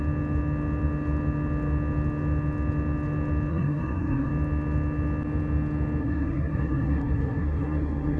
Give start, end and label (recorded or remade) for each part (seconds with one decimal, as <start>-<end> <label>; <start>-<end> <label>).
0.0-3.5 recorded; 3.5-4.3 remade; 4.3-6.0 recorded; 6.0-8.2 remade